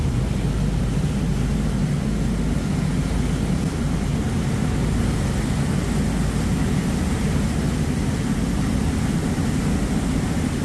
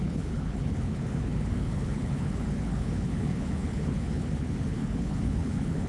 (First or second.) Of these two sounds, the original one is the first